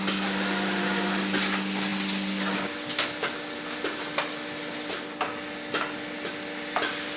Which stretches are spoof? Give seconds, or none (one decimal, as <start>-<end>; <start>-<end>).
none